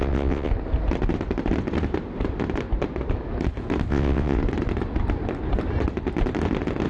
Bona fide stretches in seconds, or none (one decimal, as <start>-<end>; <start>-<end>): 0.5-3.9; 4.4-6.9